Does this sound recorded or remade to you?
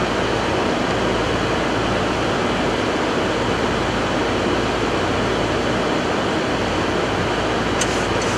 recorded